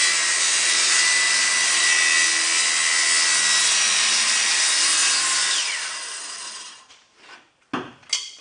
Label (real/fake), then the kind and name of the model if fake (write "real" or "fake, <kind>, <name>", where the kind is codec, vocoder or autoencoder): real